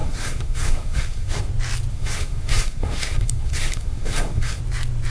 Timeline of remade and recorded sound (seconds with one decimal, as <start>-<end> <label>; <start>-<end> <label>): 0.0-1.5 remade; 1.5-1.9 recorded; 1.9-4.6 remade; 4.6-5.1 recorded

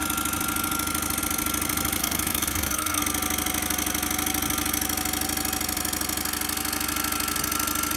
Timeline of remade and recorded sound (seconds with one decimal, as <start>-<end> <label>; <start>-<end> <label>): 0.0-2.0 recorded; 2.0-3.0 remade; 3.0-8.0 recorded

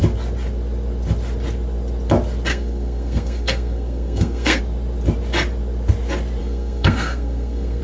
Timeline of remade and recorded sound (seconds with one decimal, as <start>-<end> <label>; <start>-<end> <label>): 0.0-2.5 recorded; 2.5-4.6 remade; 4.6-6.4 recorded; 6.4-7.8 remade

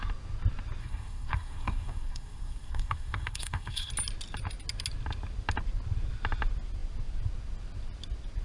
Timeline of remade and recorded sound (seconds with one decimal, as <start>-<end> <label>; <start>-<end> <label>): 0.0-0.8 recorded; 0.8-3.9 remade; 3.9-8.4 recorded

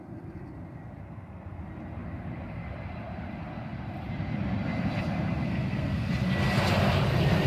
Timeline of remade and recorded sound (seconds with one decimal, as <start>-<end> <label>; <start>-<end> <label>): 0.0-1.0 recorded; 1.0-1.6 remade; 1.6-5.5 recorded; 5.5-6.1 remade; 6.1-7.5 recorded

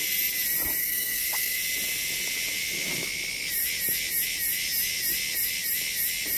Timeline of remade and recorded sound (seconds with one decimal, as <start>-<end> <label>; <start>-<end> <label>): 0.0-0.8 recorded; 0.8-1.6 remade; 1.6-6.4 recorded